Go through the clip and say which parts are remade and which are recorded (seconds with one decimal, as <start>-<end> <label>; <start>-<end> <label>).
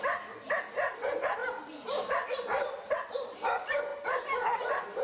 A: 0.0-5.0 recorded